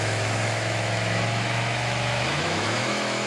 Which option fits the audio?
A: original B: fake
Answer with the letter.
B